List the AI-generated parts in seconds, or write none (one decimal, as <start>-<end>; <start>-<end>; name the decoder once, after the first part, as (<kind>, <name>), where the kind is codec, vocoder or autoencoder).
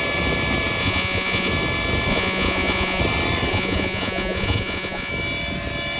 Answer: 0.8-1.5 (vocoder, Vocos); 2.1-3.0; 3.5-5.1